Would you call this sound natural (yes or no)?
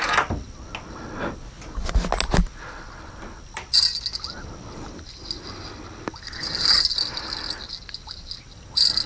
yes